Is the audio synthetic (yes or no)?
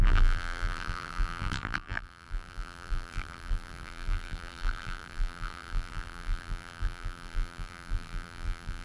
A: yes